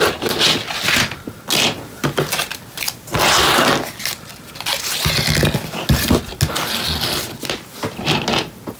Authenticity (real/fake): real